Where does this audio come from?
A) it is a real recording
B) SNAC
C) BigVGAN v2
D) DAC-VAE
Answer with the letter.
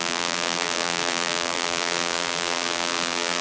C